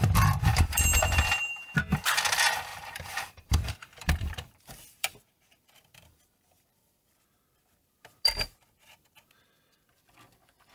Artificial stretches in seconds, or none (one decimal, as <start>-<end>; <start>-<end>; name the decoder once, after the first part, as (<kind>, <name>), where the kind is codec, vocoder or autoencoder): 0.5-1.2 (vocoder, BigVGAN v2); 2.7-7.0